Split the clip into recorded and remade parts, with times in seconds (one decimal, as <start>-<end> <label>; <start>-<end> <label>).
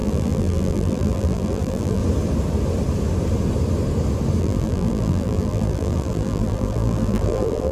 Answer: 0.0-2.0 remade; 2.0-4.4 recorded; 4.4-7.7 remade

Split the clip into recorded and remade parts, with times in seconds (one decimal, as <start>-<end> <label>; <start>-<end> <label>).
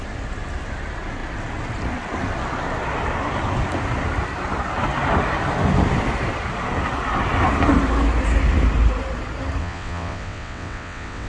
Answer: 0.0-9.6 recorded; 9.6-11.3 remade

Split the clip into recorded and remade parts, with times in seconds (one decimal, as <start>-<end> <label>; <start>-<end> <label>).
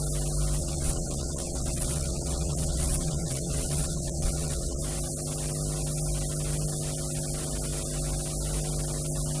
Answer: 0.0-0.6 recorded; 0.6-4.8 remade; 4.8-9.4 recorded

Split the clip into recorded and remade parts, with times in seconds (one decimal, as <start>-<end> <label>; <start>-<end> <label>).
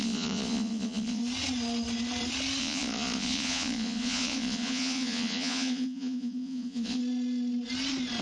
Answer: 0.0-1.2 remade; 1.2-2.6 recorded; 2.6-7.0 remade; 7.0-8.2 recorded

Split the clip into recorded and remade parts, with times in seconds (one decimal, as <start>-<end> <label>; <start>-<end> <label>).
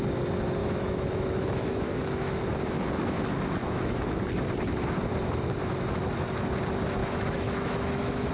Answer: 0.0-0.6 recorded; 0.6-2.4 remade; 2.4-3.6 recorded; 3.6-4.2 remade; 4.2-7.0 recorded; 7.0-8.3 remade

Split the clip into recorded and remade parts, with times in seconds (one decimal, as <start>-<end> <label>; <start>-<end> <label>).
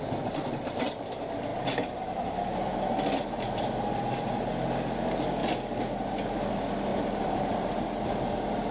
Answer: 0.0-1.5 recorded; 1.5-4.5 remade; 4.5-6.9 recorded; 6.9-7.7 remade; 7.7-8.7 recorded